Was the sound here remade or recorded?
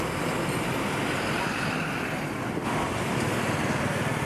recorded